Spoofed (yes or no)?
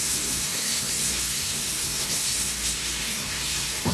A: yes